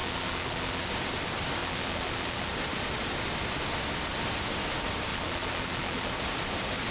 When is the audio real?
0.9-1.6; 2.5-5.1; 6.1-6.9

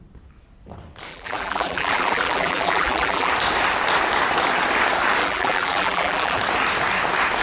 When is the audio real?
0.0-1.1; 3.3-5.2; 6.4-7.4

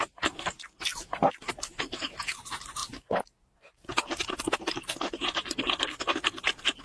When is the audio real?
0.0-6.8

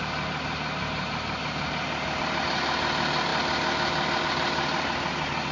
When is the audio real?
0.0-0.8; 1.7-5.5

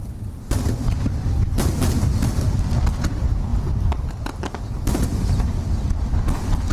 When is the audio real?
0.0-3.5; 4.1-6.7

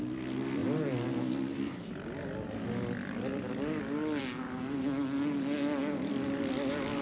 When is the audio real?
0.0-7.0

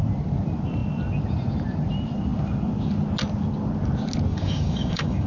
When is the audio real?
0.0-4.3

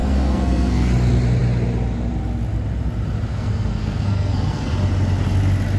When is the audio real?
0.9-3.3; 4.7-5.8